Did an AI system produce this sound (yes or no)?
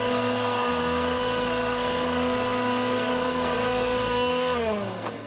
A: yes